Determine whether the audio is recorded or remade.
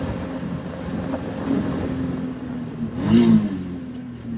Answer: recorded